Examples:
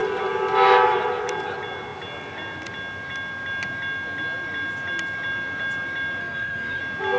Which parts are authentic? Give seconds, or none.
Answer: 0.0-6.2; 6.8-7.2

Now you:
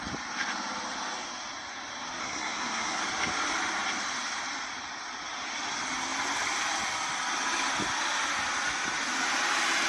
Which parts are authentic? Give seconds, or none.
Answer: 0.0-2.2; 3.0-9.9

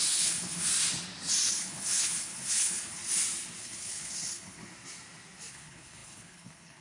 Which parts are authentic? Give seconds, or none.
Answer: 0.7-1.5; 3.0-3.6; 4.6-5.5

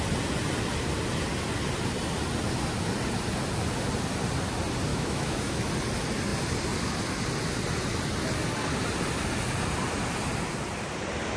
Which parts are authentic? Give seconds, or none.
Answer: 0.0-4.9; 5.7-11.4

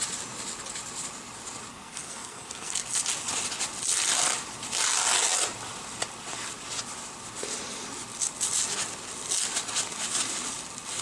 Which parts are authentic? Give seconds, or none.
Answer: 0.0-1.7; 2.9-11.0